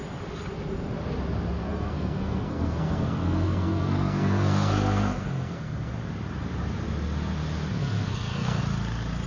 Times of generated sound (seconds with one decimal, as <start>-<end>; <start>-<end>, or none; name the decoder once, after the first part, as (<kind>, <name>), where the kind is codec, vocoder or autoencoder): 1.6-5.9 (codec, SNAC); 7.8-8.6